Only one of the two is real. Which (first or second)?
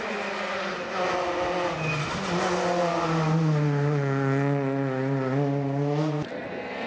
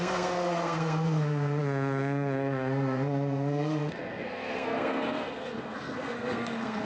first